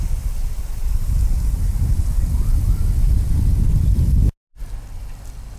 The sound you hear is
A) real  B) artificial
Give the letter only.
A